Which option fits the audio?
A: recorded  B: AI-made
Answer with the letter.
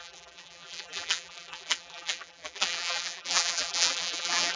B